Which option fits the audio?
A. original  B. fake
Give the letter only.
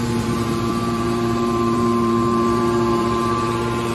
B